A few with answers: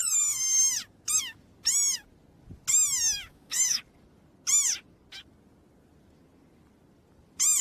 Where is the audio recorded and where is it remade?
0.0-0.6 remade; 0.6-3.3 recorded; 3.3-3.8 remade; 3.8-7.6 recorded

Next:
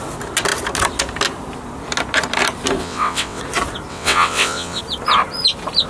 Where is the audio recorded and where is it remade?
0.0-2.8 recorded; 2.8-3.4 remade; 3.4-3.9 recorded; 3.9-4.8 remade; 4.8-5.9 recorded

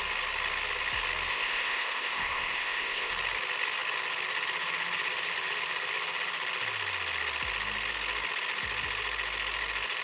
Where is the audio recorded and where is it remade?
0.0-1.3 recorded; 1.3-3.1 remade; 3.1-10.0 recorded

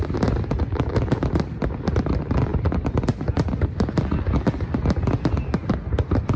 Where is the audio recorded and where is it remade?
0.0-6.4 recorded

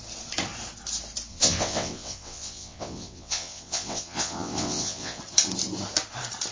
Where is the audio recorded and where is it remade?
0.0-1.3 recorded; 1.3-5.2 remade; 5.2-6.5 recorded

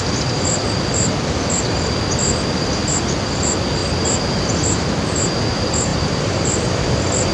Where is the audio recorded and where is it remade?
0.0-5.9 recorded; 5.9-7.3 remade